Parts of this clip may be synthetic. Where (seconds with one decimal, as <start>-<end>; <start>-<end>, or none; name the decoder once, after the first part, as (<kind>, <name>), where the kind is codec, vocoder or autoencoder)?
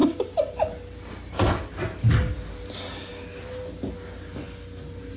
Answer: none